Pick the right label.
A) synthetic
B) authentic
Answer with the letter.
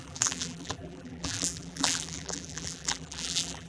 A